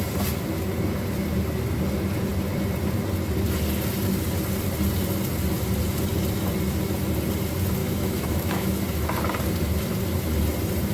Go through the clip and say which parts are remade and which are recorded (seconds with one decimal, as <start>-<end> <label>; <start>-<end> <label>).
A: 0.0-7.8 recorded; 7.8-8.8 remade; 8.8-10.9 recorded